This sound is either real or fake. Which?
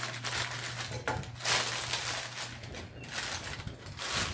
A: real